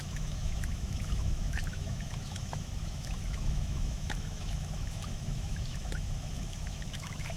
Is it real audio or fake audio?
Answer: fake